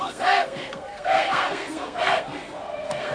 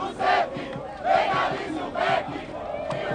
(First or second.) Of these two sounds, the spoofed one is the first